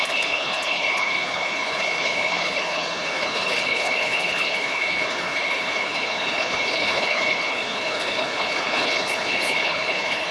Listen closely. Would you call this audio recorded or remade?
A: remade